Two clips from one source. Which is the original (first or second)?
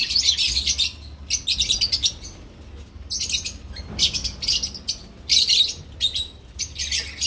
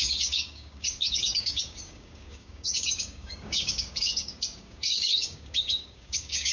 first